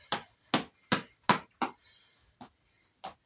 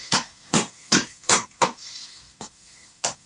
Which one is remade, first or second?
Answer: second